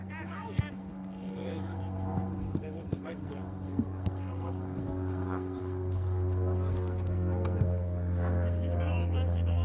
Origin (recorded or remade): remade